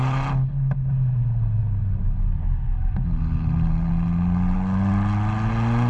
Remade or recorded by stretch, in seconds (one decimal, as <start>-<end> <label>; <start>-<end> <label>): 0.0-5.9 recorded